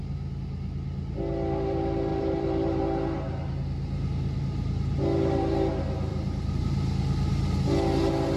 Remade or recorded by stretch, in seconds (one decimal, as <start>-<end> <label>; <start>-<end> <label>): 0.0-2.1 recorded; 2.1-2.8 remade; 2.8-6.1 recorded; 6.1-6.6 remade; 6.6-8.4 recorded